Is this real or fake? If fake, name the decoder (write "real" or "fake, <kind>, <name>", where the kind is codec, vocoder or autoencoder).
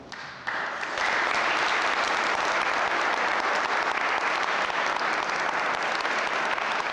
real